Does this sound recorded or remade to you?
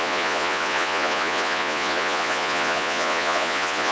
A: remade